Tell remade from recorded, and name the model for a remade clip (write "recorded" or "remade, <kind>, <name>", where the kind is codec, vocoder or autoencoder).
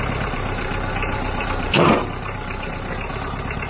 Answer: remade, vocoder, BigVGAN v2